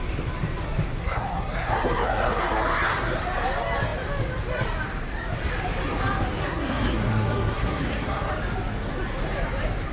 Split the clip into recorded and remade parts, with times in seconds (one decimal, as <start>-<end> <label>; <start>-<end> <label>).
0.0-1.0 recorded; 1.0-3.2 remade; 3.2-6.4 recorded; 6.4-8.3 remade; 8.3-9.9 recorded